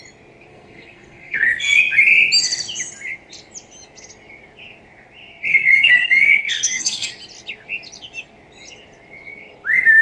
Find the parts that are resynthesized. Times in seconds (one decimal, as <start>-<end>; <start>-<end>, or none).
0.5-1.8; 5.5-7.1